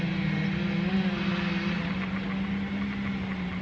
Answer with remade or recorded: recorded